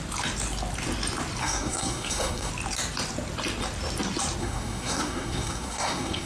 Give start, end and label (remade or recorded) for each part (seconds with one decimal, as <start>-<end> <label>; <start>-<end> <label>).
0.0-1.4 recorded; 1.4-2.5 remade; 2.5-4.4 recorded; 4.4-6.3 remade